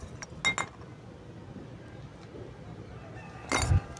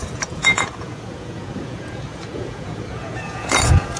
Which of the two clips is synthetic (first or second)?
second